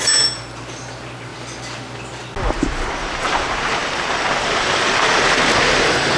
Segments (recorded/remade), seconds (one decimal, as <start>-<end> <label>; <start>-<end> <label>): 0.0-1.3 remade; 1.3-2.5 recorded; 2.5-6.2 remade